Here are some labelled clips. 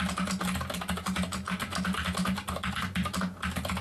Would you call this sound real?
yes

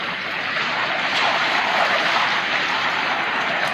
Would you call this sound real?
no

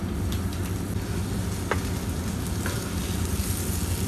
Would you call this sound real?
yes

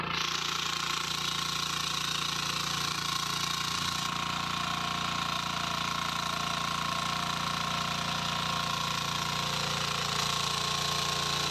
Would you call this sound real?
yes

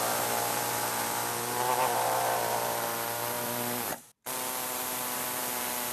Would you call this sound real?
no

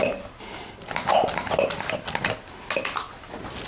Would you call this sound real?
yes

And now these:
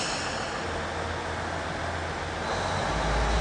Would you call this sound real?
yes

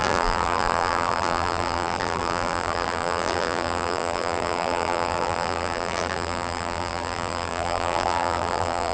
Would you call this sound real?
no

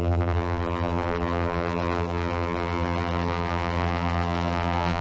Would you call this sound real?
no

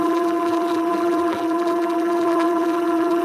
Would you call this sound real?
no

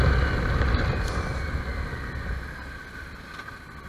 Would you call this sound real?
yes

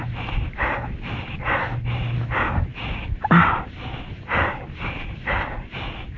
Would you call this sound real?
yes